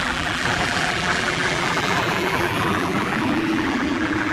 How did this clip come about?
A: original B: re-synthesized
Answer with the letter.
B